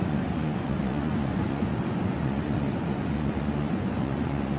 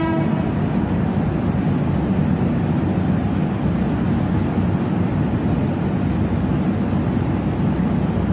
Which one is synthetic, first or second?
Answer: first